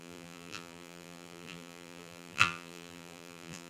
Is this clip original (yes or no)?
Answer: no